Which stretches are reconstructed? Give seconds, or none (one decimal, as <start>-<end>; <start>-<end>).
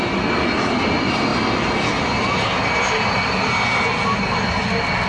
none